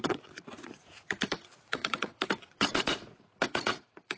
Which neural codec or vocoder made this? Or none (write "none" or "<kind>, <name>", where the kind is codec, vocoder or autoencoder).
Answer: vocoder, Vocos